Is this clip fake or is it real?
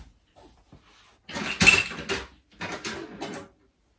real